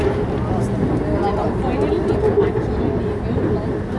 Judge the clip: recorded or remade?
recorded